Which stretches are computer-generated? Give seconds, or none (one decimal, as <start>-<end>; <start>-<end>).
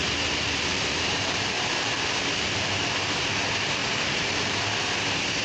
0.0-3.2; 3.8-4.6